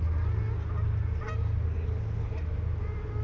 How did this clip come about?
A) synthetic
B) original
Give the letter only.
B